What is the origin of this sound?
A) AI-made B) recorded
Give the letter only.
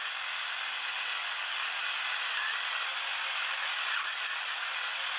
B